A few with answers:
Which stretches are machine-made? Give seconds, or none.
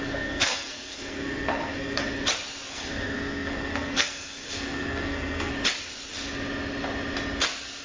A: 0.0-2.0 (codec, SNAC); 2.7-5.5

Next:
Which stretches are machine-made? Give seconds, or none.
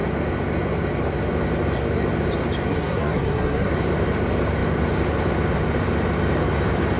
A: 2.7-3.7 (codec, SNAC)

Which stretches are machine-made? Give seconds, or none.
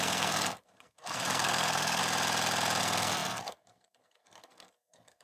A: 0.0-2.0 (codec, SNAC); 2.8-5.2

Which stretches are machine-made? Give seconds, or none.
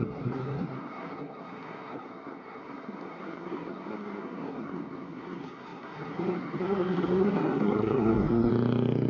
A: 0.0-8.5 (codec, SNAC)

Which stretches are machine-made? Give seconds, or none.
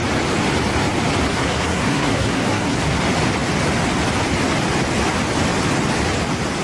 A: 1.3-3.0 (codec, SNAC)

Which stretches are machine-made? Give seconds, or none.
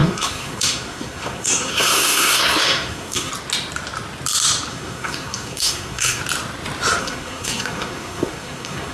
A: 0.0-3.3 (codec, SNAC); 4.7-6.2; 7.0-8.9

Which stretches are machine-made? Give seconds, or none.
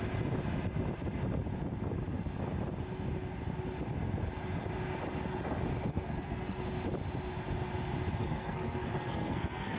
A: 5.9-6.6 (codec, SNAC); 8.2-9.8